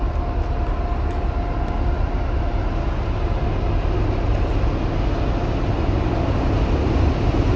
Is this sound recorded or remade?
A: recorded